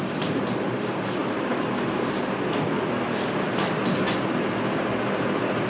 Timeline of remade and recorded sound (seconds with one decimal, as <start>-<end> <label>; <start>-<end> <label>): 0.0-5.7 recorded